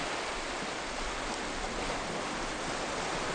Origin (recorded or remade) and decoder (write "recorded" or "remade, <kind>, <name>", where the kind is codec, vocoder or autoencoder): recorded